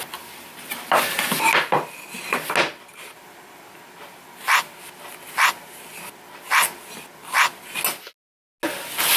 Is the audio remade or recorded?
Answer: recorded